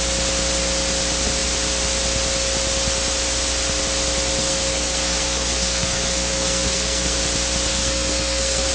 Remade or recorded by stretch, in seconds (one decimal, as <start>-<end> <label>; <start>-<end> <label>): 0.0-4.4 recorded; 4.4-7.2 remade; 7.2-7.7 recorded; 7.7-8.7 remade